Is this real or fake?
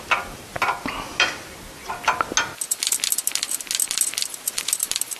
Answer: real